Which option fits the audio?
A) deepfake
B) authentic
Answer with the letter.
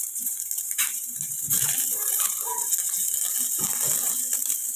A